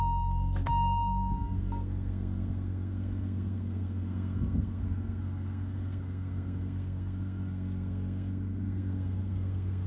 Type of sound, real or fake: fake